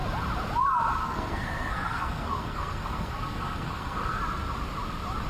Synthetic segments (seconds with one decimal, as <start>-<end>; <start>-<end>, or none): 1.0-4.2